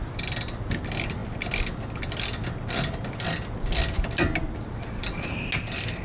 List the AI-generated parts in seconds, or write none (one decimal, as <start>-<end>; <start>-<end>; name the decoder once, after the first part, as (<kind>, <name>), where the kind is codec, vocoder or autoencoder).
none